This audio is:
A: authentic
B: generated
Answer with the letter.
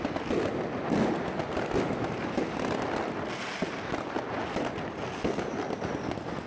A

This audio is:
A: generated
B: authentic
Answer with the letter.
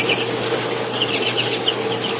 B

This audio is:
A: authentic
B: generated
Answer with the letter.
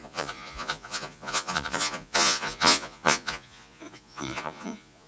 B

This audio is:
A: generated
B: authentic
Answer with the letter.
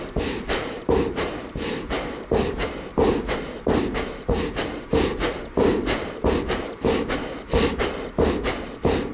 A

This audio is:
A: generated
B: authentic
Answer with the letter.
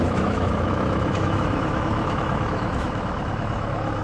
A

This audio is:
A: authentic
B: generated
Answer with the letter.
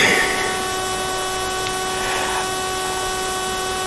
A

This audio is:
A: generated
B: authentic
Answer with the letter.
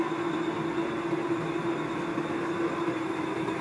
B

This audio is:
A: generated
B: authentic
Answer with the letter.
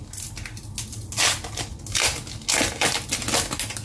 B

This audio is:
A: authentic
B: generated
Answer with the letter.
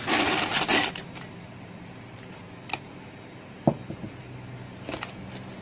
A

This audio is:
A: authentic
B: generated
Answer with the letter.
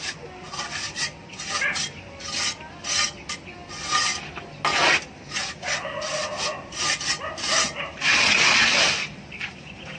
A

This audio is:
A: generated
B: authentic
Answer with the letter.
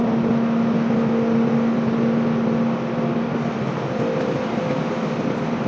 B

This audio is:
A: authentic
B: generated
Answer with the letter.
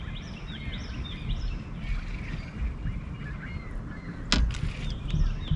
A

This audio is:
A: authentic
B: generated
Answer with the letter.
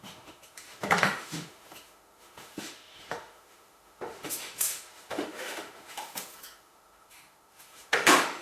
B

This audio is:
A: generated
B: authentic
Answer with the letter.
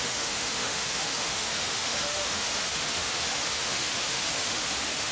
A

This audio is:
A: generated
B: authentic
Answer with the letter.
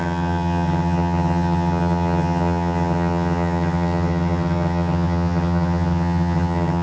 A